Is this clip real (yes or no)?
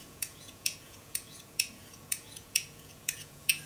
no